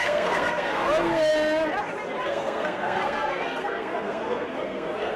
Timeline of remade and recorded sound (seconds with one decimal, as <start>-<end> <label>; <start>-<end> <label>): 0.0-1.3 remade; 1.3-2.2 recorded; 2.2-5.2 remade